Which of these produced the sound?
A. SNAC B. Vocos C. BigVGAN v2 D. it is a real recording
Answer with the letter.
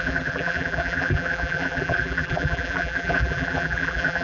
C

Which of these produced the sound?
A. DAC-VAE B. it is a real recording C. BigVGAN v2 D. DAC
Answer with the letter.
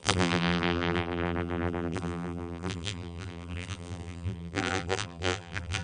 C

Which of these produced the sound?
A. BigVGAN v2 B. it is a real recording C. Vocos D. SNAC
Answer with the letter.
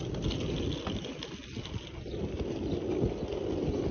B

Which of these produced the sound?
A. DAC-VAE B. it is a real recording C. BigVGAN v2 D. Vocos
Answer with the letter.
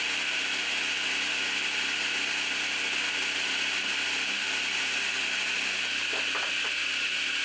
B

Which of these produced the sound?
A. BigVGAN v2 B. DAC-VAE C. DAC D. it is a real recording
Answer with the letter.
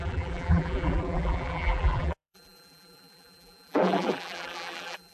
A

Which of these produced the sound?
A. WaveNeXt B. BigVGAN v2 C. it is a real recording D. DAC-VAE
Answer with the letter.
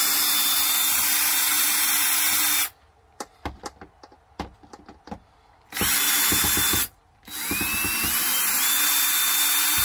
C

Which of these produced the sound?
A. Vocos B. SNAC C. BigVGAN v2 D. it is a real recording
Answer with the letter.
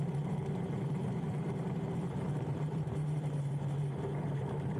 C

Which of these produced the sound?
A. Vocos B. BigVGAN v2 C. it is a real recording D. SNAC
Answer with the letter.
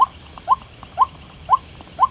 C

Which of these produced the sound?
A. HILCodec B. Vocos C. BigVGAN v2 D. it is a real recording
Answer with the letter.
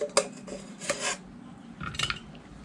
D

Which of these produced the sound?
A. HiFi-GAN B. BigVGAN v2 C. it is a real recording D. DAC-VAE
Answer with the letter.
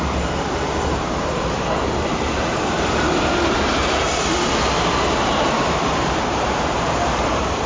B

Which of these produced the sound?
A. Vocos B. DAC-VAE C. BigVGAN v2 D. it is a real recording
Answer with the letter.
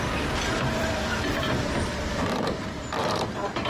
C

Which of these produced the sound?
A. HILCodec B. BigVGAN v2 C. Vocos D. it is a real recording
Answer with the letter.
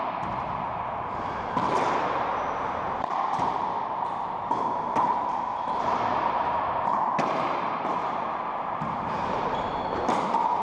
B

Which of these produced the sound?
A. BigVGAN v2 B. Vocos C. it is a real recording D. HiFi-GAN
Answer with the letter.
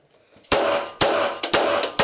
A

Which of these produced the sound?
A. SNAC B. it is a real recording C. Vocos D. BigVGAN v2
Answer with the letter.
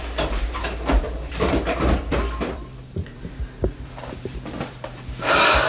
D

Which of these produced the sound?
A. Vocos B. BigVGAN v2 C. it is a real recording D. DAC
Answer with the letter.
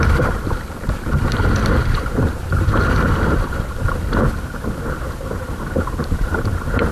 B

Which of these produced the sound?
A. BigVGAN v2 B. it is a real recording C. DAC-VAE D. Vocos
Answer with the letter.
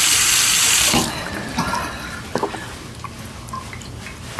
B